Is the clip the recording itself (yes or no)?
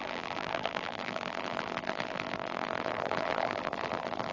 no